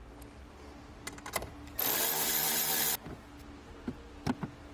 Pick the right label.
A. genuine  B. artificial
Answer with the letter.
A